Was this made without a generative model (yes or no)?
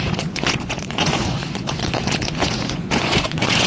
no